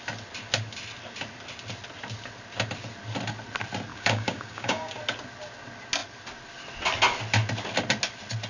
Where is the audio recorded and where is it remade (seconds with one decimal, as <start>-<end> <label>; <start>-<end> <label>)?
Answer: 0.0-3.9 recorded; 3.9-5.0 remade; 5.0-8.5 recorded